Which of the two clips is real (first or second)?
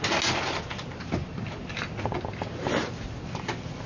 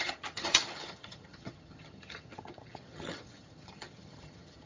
first